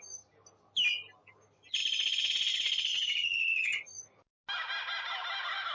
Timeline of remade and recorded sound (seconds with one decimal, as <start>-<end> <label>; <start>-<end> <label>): 0.0-2.9 recorded; 2.9-3.8 remade; 3.8-5.7 recorded